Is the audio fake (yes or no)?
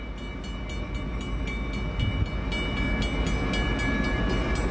no